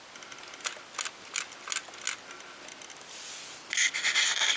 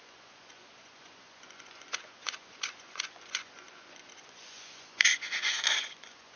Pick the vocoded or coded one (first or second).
second